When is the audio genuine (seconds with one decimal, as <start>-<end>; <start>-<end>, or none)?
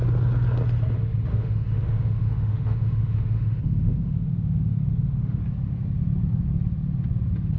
0.0-1.3; 5.4-7.6